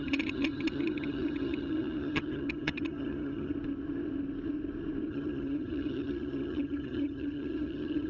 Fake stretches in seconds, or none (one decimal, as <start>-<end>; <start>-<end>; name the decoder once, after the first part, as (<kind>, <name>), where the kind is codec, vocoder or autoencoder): 0.0-3.5 (vocoder, HiFi-GAN); 5.1-8.1